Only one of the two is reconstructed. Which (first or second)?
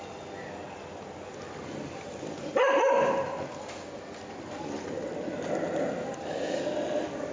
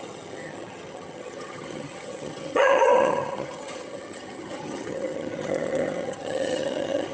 second